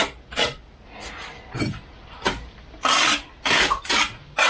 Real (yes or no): yes